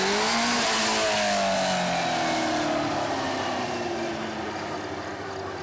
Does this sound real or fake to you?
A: real